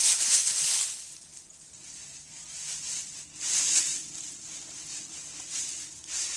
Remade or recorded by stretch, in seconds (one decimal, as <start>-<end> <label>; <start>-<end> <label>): 0.0-6.4 recorded

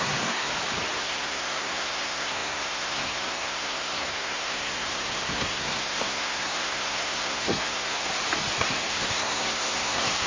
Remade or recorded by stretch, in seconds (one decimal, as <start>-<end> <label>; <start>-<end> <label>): 0.0-0.5 remade; 0.5-1.0 recorded; 1.0-8.1 remade; 8.1-8.6 recorded; 8.6-10.3 remade

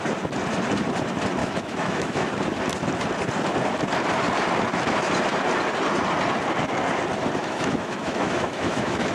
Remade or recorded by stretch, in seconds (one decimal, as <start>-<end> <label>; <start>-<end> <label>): 0.0-1.4 recorded; 1.4-2.3 remade; 2.3-7.4 recorded; 7.4-9.1 remade

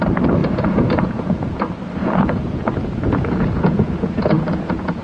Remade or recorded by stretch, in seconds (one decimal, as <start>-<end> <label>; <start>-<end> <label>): 0.0-0.4 recorded; 0.4-1.6 remade; 1.6-2.0 recorded; 2.0-5.0 remade

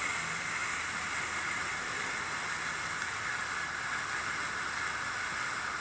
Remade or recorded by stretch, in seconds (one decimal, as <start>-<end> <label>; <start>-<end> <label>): 0.0-5.8 recorded